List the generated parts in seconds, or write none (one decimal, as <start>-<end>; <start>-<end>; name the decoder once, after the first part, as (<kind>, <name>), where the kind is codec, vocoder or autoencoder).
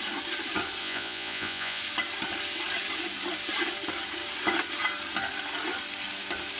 0.8-1.8 (vocoder, Vocos)